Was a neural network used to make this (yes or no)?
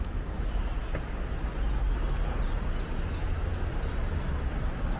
no